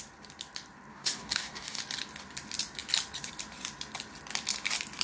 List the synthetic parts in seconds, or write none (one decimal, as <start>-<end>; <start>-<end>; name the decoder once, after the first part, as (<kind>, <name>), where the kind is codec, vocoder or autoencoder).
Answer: 0.9-1.8 (codec, DAC)